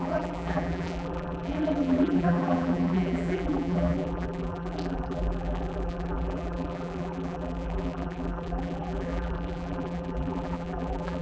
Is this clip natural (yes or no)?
no